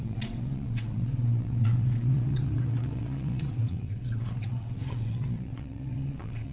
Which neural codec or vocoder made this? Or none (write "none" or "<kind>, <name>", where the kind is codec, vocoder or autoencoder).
vocoder, WaveNeXt